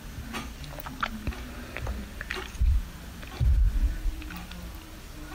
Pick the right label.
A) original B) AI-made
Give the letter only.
A